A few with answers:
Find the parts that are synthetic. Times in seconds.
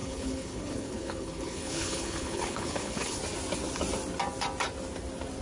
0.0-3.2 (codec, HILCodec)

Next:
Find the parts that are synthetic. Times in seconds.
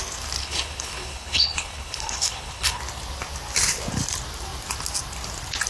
0.4-2.8 (codec, HILCodec)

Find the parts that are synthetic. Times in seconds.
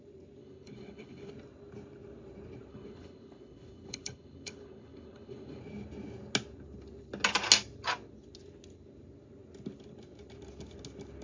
0.4-1.3 (codec, HILCodec); 2.7-5.6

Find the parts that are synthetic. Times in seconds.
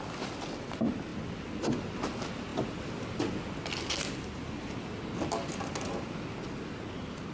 none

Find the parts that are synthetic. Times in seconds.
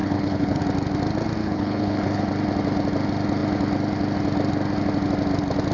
0.0-0.6 (codec, HILCodec); 1.4-2.2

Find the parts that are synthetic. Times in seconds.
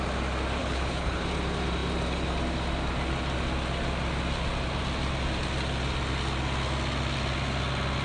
0.6-1.2 (codec, HILCodec)